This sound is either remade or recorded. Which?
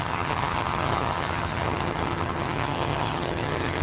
remade